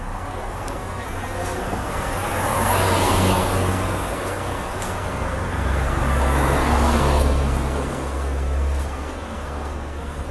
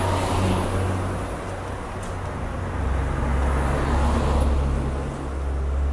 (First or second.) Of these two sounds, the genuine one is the second